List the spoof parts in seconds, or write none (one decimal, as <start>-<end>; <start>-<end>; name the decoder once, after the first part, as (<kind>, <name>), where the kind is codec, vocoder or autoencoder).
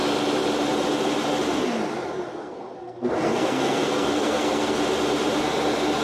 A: 2.3-4.8 (codec, SNAC)